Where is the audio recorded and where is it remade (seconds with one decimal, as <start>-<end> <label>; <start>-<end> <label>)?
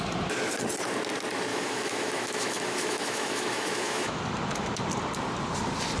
0.0-1.5 recorded; 1.5-4.2 remade; 4.2-6.0 recorded